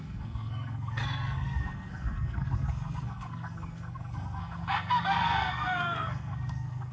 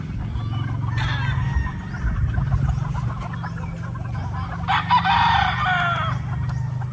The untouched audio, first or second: second